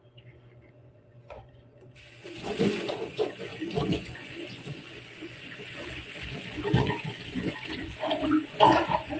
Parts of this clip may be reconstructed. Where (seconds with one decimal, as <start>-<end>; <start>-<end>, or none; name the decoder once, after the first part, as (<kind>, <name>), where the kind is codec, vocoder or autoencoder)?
0.0-9.2 (vocoder, Vocos)